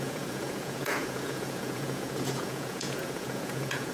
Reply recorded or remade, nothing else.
remade